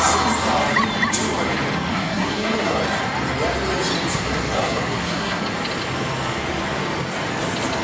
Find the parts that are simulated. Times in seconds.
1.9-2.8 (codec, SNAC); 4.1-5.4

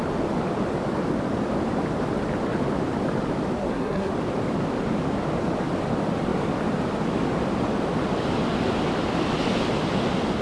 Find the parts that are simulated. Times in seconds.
3.6-4.1 (codec, SNAC)

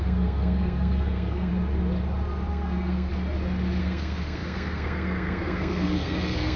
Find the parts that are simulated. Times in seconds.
0.0-1.5 (codec, SNAC); 2.5-3.1; 3.8-6.6

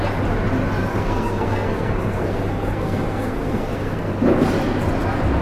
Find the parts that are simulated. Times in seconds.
0.9-4.1 (codec, SNAC)

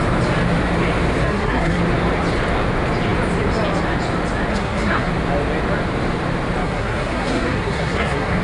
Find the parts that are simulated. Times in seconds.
1.2-1.8 (codec, SNAC); 4.5-5.1; 6.6-8.4

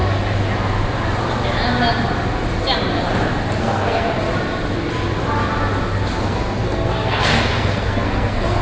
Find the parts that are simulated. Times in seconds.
3.6-4.1 (codec, SNAC); 6.2-8.6